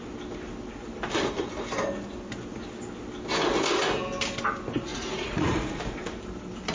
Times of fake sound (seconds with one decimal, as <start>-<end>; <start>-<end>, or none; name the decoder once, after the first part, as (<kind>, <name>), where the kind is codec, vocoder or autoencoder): 4.9-5.8 (vocoder, Vocos)